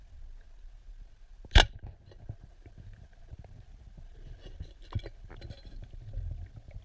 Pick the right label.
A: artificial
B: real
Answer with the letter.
B